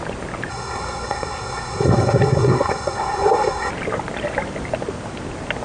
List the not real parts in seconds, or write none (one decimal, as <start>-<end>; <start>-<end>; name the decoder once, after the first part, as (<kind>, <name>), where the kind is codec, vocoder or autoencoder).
0.5-3.7 (codec, SNAC)